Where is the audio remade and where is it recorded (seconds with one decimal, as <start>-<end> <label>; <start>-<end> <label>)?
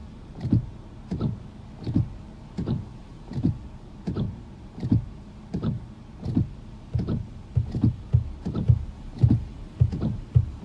0.0-0.7 remade; 0.7-2.9 recorded; 2.9-5.8 remade; 5.8-10.6 recorded